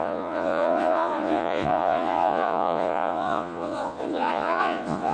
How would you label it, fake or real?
fake